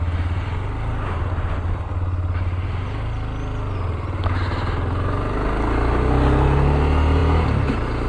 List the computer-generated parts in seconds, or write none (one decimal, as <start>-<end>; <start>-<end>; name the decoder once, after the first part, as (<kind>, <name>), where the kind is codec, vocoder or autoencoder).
none